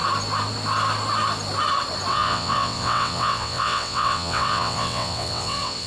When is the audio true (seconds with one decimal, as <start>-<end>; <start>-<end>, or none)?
0.0-2.1